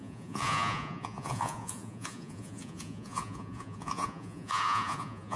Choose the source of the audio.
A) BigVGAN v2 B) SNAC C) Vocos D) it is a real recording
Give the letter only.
C